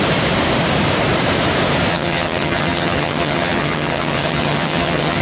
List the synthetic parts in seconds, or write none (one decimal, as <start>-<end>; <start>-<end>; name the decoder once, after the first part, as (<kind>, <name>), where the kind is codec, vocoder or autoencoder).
1.9-5.2 (vocoder, HiFi-GAN)